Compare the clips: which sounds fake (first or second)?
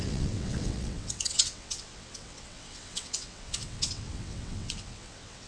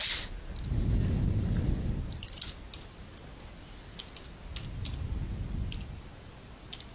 first